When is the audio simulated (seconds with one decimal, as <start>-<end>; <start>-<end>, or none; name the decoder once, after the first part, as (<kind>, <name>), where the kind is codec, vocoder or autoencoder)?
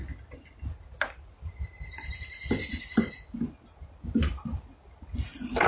none